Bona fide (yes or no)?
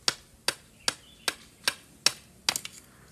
yes